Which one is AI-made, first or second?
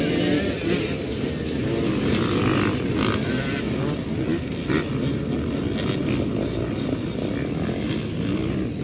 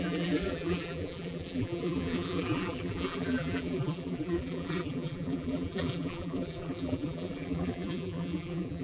second